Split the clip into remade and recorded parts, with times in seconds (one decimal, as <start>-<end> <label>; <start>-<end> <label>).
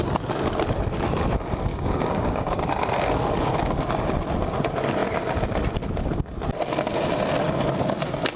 0.0-1.7 recorded; 1.7-2.6 remade; 2.6-8.4 recorded